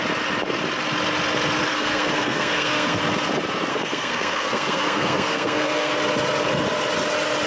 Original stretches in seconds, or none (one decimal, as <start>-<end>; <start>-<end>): 0.0-1.7; 3.0-3.7; 5.9-7.5